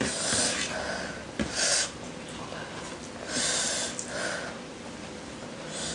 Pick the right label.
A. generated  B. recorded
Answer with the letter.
B